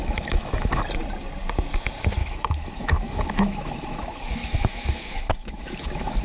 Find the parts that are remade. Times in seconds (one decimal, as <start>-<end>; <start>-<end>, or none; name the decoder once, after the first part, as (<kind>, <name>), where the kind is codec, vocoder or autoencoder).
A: 0.0-0.8 (autoencoder, DAC-VAE); 2.2-6.2